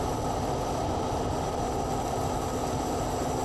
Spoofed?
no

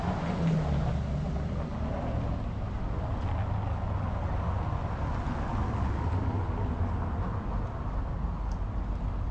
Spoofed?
no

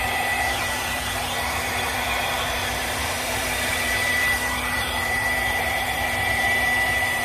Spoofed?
yes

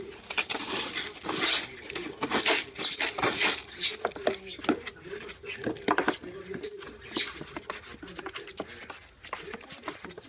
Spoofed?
no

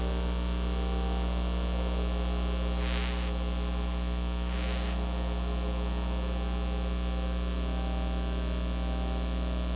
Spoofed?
no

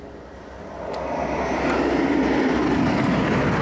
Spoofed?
no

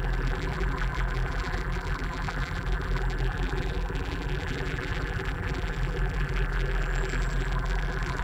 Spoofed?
yes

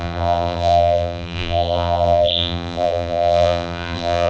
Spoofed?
yes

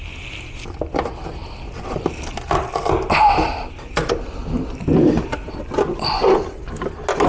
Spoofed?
no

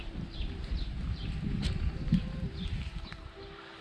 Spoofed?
yes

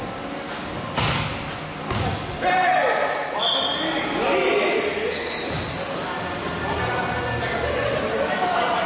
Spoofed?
no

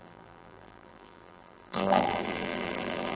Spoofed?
yes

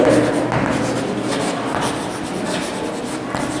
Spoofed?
no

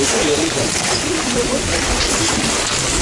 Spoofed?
no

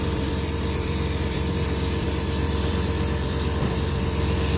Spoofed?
yes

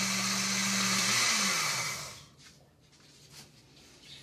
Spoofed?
no